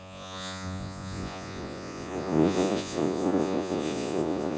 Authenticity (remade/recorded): remade